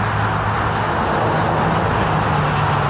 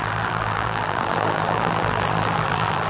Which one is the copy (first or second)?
second